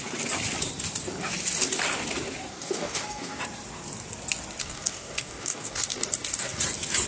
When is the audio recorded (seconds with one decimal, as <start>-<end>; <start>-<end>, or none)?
0.0-2.5; 3.4-4.6; 6.6-7.1